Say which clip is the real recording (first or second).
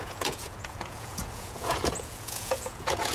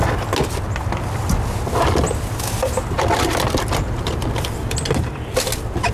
second